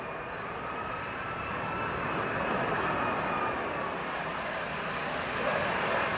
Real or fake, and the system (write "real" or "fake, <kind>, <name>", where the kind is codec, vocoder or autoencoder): real